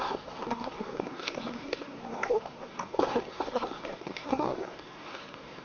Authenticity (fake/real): fake